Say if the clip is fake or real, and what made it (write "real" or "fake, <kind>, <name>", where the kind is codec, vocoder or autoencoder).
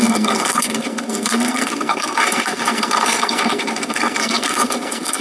fake, codec, SNAC